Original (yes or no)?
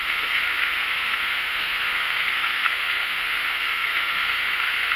no